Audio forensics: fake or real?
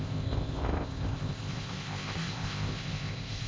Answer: fake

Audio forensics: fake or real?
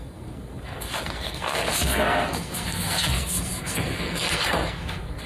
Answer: fake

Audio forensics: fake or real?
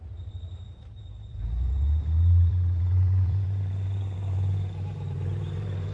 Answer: fake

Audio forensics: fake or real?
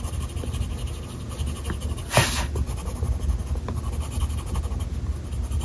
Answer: real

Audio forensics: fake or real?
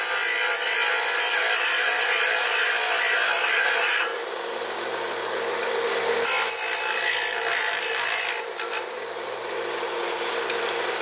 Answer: real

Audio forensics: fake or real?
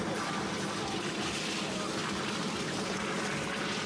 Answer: real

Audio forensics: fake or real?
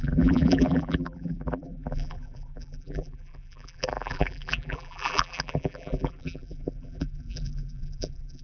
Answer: fake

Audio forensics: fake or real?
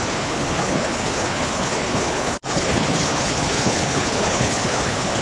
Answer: fake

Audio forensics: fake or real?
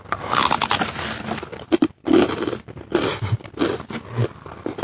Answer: real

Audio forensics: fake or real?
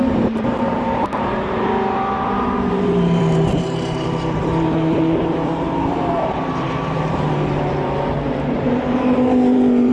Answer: fake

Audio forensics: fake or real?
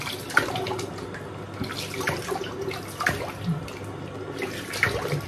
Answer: real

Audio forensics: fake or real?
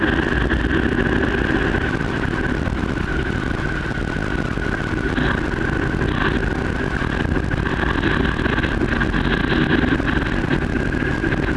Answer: real